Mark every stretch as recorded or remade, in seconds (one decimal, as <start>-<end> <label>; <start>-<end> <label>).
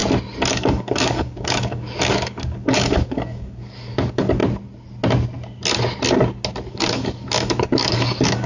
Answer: 0.0-0.5 recorded; 0.5-4.4 remade; 4.4-6.7 recorded; 6.7-8.5 remade